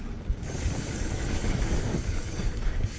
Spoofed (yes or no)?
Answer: yes